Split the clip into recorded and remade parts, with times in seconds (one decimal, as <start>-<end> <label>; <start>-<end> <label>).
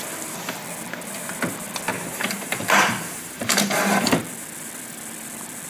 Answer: 0.0-1.9 recorded; 1.9-4.2 remade; 4.2-5.7 recorded